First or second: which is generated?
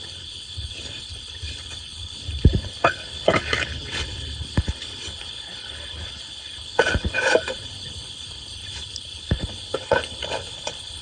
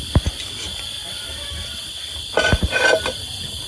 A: first